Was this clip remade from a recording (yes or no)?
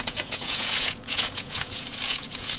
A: yes